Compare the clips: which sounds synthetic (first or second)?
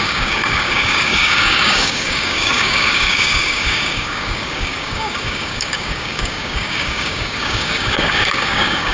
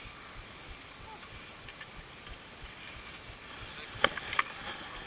first